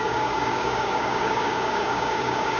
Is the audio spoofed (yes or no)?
yes